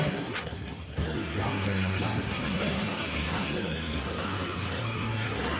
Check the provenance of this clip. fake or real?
fake